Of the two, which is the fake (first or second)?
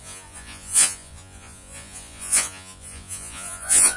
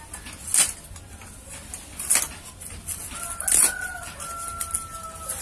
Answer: first